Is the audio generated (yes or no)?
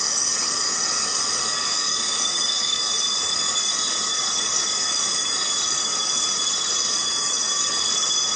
yes